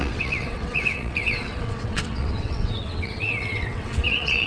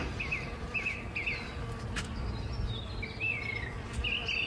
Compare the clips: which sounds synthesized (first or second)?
first